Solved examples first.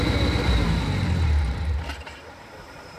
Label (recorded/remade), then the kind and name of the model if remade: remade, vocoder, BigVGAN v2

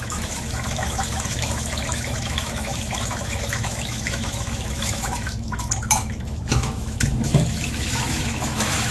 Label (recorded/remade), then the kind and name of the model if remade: remade, autoencoder, DAC-VAE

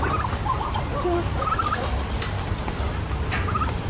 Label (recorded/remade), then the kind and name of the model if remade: recorded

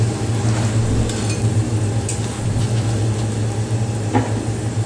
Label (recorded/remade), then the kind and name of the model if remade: recorded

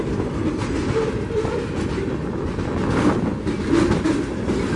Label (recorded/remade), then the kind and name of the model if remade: recorded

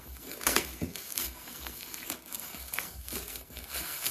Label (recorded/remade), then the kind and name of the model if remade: remade, codec, SNAC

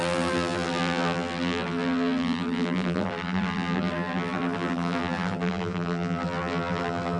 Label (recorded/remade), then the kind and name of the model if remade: remade, vocoder, BigVGAN v2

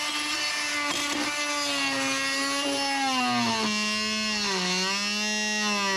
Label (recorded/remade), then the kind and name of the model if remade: recorded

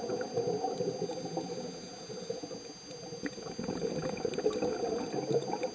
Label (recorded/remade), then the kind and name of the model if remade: recorded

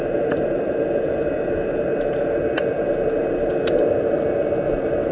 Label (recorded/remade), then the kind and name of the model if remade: recorded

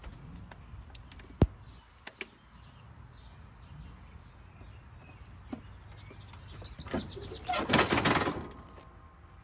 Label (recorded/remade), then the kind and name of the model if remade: recorded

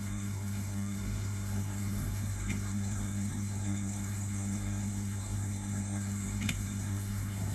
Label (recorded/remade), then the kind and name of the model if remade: remade, codec, SNAC